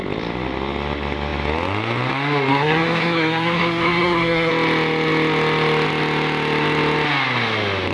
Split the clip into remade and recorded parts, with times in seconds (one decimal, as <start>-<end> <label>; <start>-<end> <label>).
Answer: 0.0-2.5 recorded; 2.5-4.5 remade; 4.5-7.9 recorded